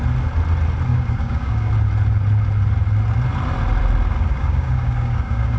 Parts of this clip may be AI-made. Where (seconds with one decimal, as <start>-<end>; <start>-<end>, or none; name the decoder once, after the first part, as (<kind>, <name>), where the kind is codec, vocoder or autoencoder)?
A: 0.9-1.7 (codec, DAC); 4.4-5.6